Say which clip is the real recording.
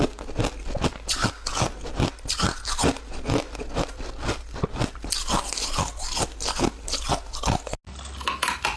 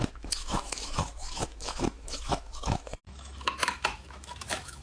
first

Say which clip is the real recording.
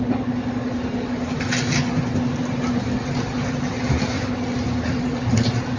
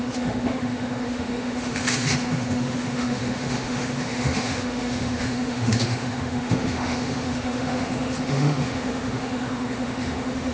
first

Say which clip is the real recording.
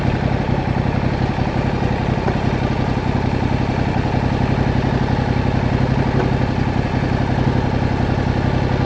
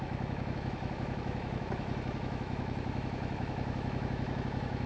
first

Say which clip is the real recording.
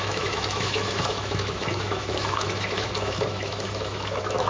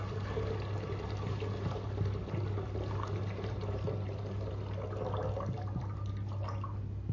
second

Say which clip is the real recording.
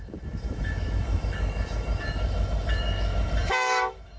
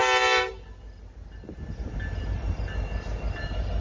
second